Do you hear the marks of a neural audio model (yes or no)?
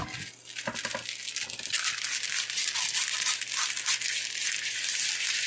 no